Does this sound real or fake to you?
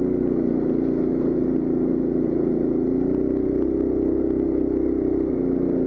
real